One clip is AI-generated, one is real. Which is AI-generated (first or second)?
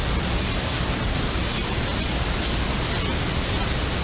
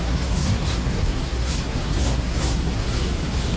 second